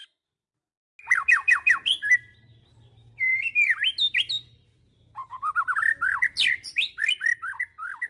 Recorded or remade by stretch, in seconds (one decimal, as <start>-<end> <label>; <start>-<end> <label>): 0.0-8.1 recorded